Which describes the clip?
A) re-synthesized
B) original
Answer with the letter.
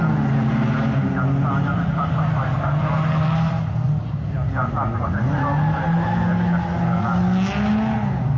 B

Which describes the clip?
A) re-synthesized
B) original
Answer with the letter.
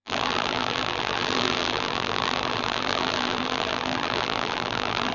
A